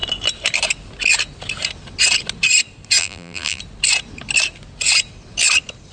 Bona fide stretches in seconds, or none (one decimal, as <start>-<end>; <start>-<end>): 0.0-3.0; 3.6-5.9